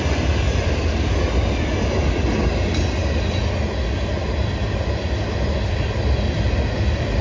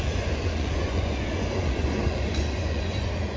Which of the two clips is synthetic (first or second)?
second